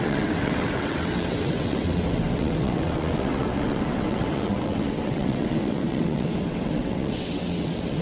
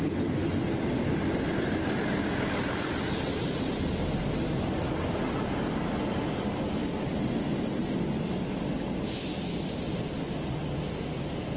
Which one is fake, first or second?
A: first